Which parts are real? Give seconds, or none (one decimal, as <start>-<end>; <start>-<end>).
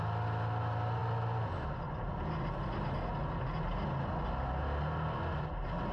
0.0-5.9